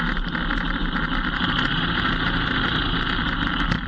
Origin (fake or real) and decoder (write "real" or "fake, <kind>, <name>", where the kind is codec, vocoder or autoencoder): real